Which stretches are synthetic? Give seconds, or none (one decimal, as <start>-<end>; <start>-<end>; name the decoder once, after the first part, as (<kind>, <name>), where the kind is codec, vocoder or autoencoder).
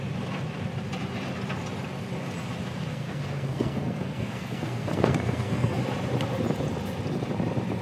2.9-5.8 (codec, SNAC)